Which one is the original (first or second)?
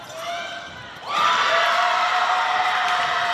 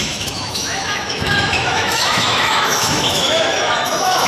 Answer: first